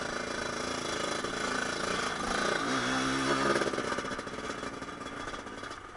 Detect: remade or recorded recorded